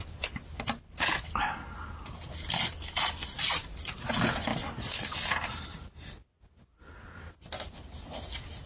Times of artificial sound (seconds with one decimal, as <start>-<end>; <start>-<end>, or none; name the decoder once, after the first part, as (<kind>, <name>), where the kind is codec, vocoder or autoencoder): none